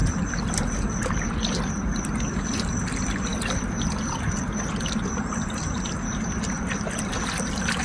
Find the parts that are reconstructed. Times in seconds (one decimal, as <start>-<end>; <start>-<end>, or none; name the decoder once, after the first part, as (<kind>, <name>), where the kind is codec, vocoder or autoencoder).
none